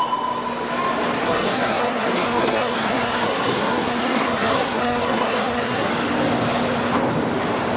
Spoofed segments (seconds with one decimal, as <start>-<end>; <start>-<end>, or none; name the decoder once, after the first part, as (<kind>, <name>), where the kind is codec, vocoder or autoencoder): 1.2-5.9 (codec, SNAC)